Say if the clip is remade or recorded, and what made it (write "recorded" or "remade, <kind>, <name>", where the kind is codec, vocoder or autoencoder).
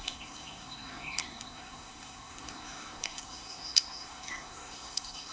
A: remade, codec, SNAC